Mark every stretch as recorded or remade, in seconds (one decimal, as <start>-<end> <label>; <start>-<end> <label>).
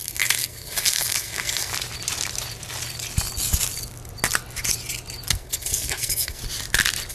0.0-1.7 remade; 1.7-5.3 recorded; 5.3-6.4 remade; 6.4-7.1 recorded